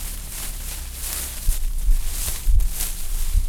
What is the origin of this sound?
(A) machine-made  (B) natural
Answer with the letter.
B